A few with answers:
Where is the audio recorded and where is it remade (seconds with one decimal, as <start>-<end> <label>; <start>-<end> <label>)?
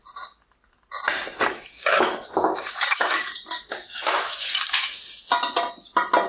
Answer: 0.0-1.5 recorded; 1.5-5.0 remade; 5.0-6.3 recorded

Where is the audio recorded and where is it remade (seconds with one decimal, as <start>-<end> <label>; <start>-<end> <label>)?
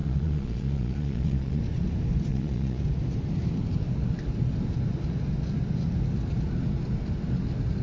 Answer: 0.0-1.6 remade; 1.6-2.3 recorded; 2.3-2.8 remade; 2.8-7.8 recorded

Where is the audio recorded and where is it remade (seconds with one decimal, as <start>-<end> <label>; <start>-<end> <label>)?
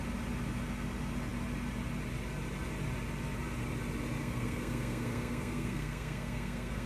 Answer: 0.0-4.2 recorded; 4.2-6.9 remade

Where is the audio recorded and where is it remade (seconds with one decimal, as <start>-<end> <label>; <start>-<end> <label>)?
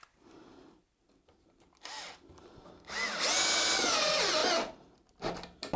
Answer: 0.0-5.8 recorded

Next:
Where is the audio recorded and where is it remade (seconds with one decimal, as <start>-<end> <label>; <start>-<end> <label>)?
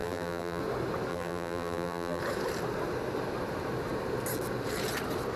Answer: 0.0-0.6 remade; 0.6-1.1 recorded; 1.1-2.2 remade; 2.2-5.4 recorded